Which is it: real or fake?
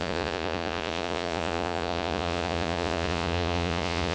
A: fake